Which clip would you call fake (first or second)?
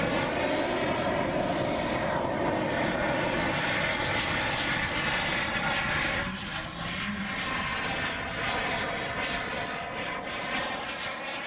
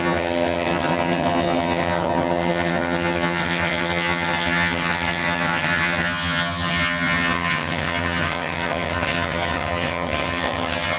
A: second